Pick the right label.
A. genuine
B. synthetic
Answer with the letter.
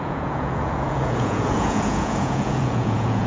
B